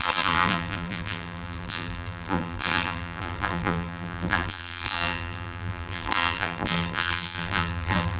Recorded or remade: remade